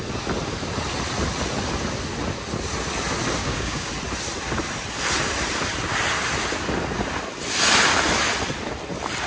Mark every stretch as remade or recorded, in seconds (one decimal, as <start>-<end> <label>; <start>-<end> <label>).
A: 0.0-3.4 recorded; 3.4-3.9 remade; 3.9-9.3 recorded